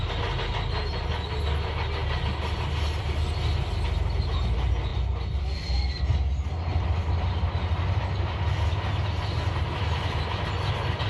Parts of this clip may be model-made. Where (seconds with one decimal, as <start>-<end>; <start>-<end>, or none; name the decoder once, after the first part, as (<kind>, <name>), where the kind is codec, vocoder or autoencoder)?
4.9-6.0 (vocoder, BigVGAN v2); 6.7-7.5